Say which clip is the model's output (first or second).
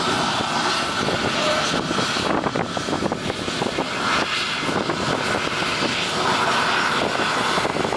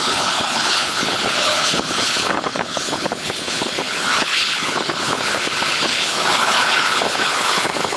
second